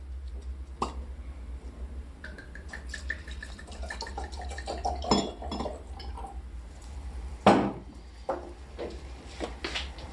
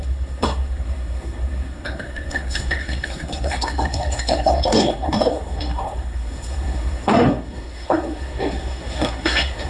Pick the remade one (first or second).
second